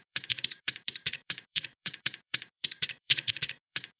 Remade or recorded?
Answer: remade